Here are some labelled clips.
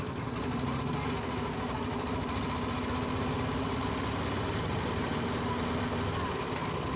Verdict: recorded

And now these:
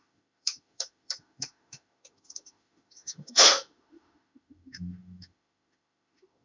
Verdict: remade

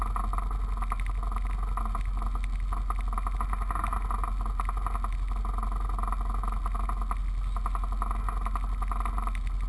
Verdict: recorded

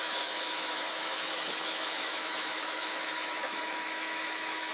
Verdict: remade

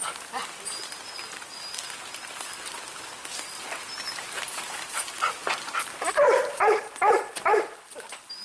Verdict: recorded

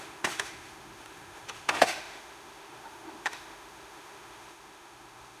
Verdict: remade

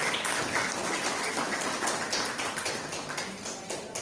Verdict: recorded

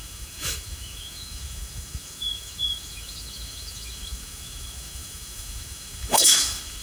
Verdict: remade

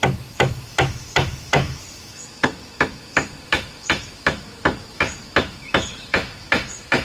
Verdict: remade